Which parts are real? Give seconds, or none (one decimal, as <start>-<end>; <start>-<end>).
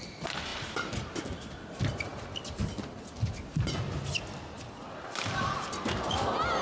0.0-6.6